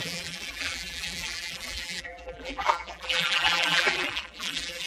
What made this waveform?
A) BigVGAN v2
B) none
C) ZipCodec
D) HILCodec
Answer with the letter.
A